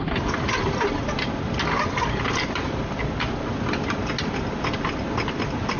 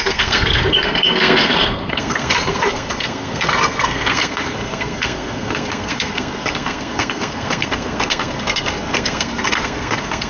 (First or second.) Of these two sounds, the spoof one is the second